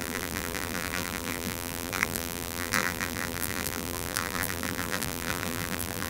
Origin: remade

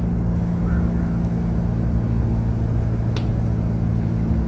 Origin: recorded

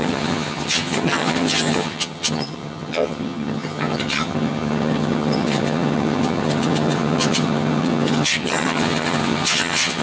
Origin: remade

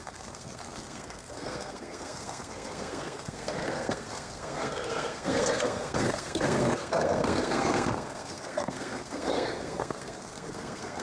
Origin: remade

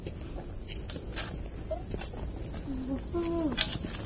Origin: recorded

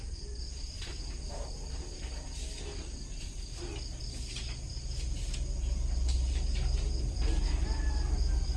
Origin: recorded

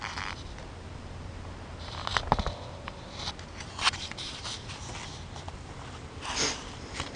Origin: recorded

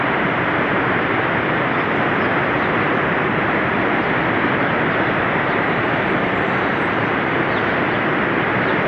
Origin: remade